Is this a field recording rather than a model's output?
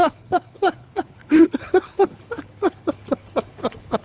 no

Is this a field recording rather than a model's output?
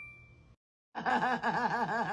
yes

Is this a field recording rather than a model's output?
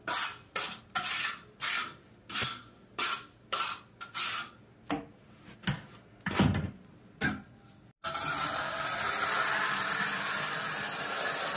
yes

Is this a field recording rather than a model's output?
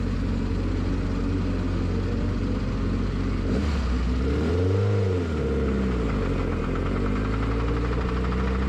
yes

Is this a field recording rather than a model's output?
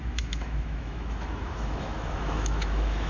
no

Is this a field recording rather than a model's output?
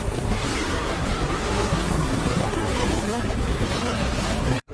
no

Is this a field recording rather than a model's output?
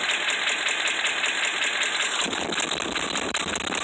yes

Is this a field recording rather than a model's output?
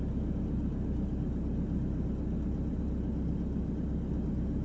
yes